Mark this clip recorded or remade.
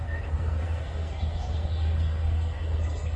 remade